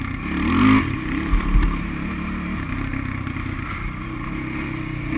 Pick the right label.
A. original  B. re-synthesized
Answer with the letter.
A